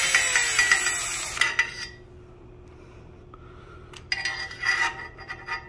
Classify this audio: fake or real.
real